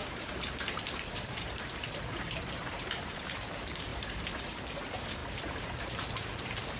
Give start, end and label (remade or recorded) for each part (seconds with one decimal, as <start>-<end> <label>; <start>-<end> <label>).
0.0-3.9 remade; 3.9-4.4 recorded; 4.4-6.8 remade